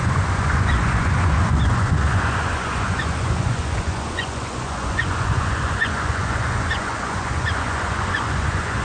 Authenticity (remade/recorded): remade